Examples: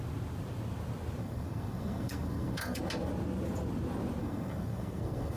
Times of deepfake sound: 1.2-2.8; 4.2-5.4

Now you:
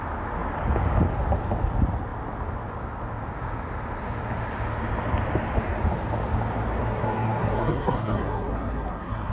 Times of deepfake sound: 6.8-9.3

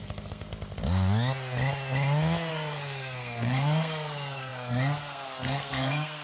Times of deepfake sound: 0.0-0.5; 2.5-6.2

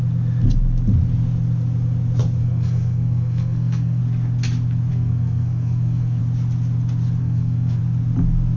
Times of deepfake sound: 2.4-4.0; 4.9-6.2; 7.2-7.8

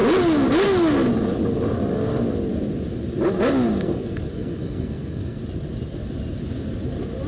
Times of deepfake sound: 3.8-5.4

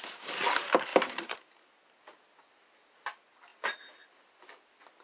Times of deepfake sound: none

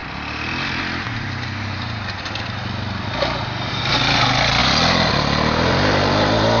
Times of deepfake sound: none

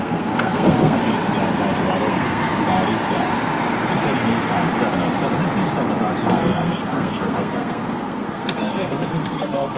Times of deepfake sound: 0.0-1.0; 2.1-2.5; 6.3-9.8